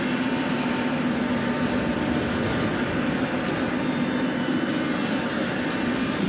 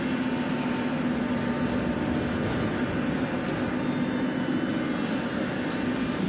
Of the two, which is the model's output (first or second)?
first